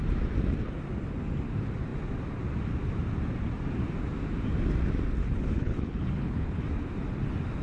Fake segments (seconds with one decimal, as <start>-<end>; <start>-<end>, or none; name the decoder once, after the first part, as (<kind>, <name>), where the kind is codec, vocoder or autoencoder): 5.2-6.6 (codec, HILCodec)

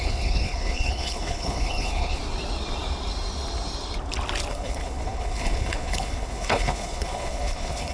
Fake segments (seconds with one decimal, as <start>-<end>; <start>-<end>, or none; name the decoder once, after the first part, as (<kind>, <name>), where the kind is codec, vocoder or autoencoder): 0.0-2.2 (codec, HILCodec); 4.5-7.9

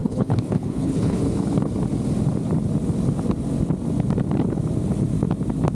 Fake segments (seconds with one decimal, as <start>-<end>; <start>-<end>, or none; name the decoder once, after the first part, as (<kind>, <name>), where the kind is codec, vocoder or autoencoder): 0.0-1.2 (codec, HILCodec)